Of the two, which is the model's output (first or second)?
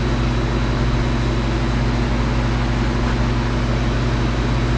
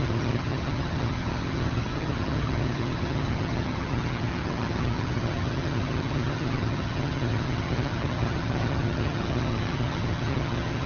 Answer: second